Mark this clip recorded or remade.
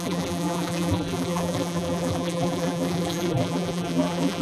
remade